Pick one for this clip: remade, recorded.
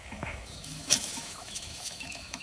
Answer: remade